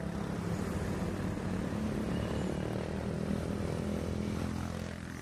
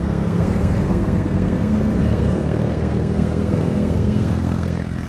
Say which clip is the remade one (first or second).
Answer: second